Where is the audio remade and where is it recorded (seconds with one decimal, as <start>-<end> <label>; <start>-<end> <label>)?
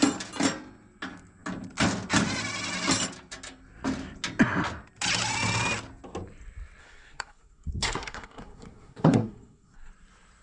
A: 0.0-6.8 recorded; 6.8-9.9 remade; 9.9-10.4 recorded